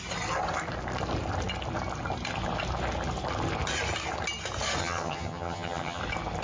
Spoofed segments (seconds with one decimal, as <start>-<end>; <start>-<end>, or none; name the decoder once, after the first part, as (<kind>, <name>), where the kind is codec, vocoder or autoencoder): 4.8-6.0 (vocoder, HiFi-GAN)